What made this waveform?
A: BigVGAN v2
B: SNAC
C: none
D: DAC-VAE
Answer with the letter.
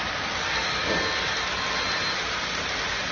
C